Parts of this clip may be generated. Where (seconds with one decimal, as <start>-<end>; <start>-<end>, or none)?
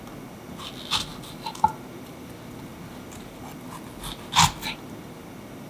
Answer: none